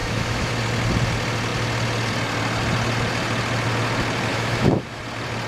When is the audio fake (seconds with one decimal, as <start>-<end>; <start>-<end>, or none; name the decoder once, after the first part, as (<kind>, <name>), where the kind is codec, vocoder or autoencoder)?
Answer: 0.0-0.5 (autoencoder, DAC-VAE); 4.3-5.0